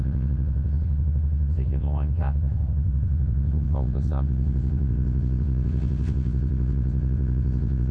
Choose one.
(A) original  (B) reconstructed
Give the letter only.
B